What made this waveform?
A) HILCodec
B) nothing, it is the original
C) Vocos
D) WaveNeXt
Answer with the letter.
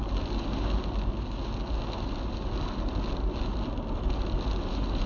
B